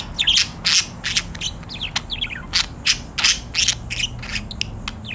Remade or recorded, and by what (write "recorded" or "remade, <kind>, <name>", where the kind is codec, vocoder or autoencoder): recorded